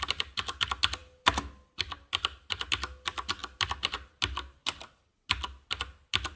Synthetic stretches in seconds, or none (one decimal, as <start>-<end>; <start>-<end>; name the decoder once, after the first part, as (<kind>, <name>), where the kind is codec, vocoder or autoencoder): none